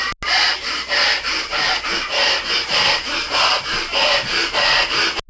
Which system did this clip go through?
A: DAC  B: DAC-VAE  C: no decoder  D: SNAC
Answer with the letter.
C